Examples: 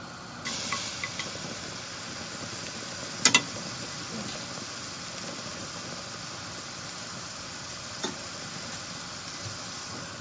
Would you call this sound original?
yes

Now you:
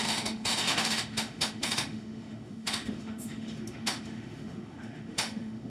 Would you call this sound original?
no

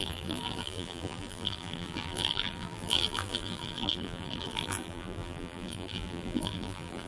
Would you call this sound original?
no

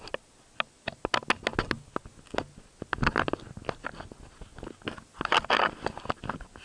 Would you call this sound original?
yes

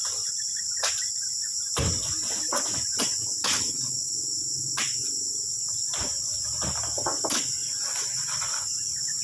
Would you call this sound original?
yes